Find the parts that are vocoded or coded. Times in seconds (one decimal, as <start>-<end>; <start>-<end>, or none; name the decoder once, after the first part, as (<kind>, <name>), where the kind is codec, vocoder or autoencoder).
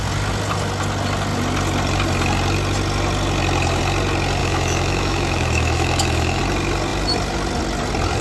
4.4-6.4 (autoencoder, DAC-VAE)